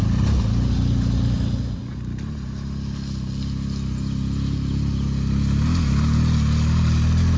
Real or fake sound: real